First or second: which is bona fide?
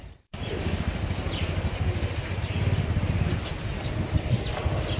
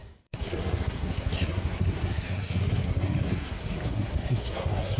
first